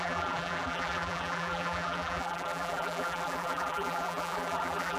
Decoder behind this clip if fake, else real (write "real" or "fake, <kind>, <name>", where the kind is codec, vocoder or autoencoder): fake, vocoder, BigVGAN v2